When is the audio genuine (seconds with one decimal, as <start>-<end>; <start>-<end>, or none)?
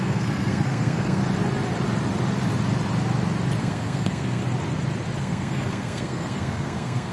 1.2-3.6; 4.4-5.2